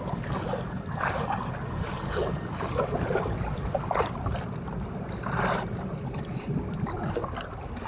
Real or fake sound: real